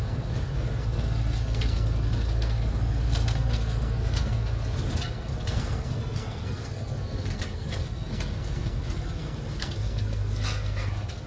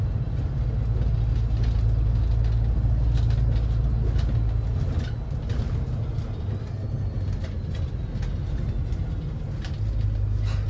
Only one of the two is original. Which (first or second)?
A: second